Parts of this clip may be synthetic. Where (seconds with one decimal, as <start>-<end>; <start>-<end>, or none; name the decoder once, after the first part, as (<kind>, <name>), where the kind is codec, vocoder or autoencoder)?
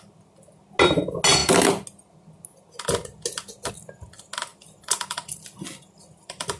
4.5-6.6 (vocoder, BigVGAN v2)